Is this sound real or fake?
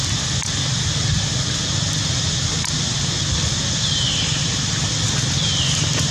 real